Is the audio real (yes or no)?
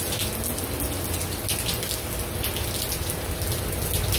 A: yes